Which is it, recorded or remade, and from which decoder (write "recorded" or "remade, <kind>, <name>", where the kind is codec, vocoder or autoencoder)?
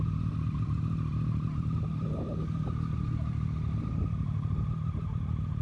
recorded